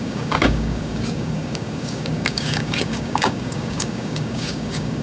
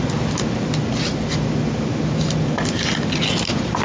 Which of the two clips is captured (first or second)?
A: second